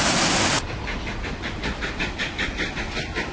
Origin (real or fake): real